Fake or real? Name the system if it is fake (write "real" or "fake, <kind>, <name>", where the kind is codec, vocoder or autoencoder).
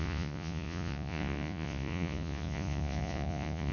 fake, vocoder, Vocos